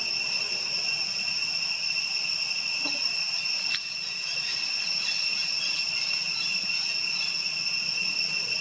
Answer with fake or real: real